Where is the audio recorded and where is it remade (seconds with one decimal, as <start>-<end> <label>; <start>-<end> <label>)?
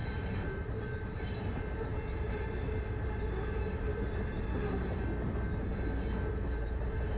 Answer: 0.0-1.2 remade; 1.2-7.2 recorded